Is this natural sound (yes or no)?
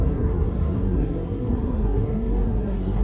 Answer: no